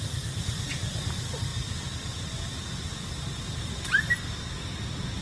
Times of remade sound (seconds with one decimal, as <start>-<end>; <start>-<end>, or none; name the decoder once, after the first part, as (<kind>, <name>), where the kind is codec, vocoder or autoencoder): none

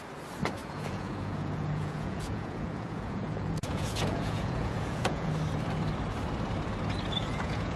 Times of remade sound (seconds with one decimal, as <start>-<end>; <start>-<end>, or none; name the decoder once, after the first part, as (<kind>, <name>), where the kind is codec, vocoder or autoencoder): 0.6-5.3 (vocoder, Vocos); 7.2-7.8

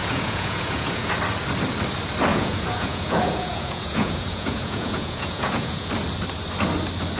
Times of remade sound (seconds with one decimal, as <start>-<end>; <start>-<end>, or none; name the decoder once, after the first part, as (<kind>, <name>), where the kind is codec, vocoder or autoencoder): 0.0-1.1 (vocoder, Vocos); 2.3-5.9